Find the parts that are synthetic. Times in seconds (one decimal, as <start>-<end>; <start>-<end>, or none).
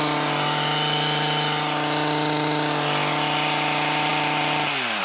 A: none